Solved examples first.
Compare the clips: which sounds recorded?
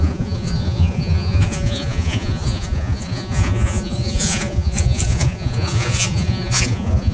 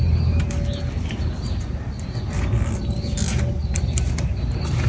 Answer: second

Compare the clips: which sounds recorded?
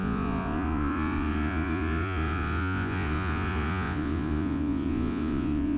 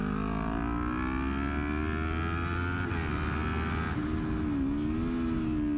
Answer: second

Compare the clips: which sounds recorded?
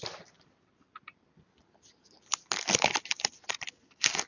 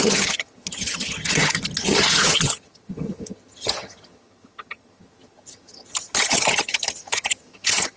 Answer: first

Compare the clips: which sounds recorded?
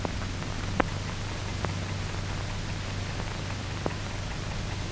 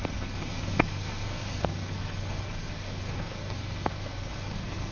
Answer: first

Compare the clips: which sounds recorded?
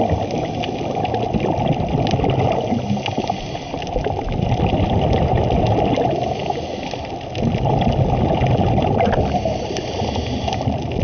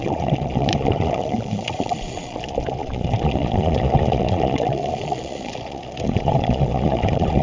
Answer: first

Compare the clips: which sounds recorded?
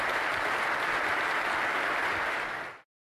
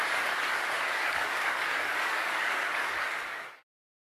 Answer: first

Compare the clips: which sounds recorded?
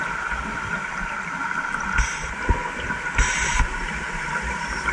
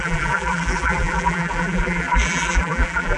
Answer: first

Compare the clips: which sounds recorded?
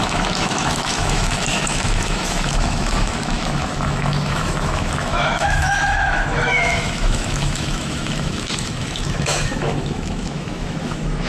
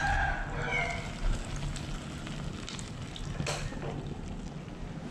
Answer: second